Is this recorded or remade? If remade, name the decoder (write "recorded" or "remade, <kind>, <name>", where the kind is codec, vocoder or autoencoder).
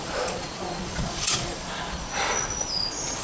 remade, vocoder, Vocos